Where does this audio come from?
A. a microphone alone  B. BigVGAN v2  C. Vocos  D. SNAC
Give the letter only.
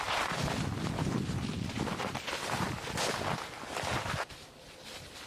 A